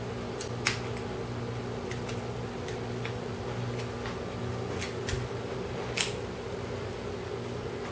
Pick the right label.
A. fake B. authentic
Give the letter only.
B